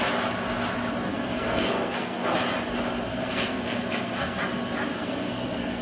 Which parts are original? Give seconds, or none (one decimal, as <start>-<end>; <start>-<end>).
0.0-1.1; 2.4-3.1; 4.4-4.9